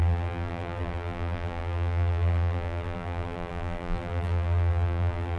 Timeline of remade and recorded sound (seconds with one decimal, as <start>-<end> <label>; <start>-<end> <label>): 0.0-5.4 remade